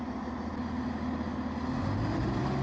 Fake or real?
real